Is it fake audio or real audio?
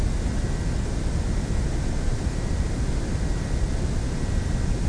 real